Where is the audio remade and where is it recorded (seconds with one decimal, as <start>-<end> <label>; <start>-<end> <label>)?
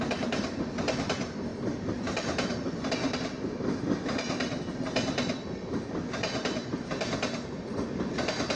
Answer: 0.0-8.6 recorded